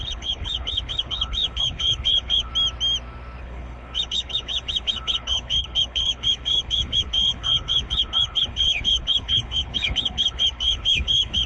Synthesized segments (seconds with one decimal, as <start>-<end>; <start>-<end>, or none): 0.0-2.5; 3.4-11.5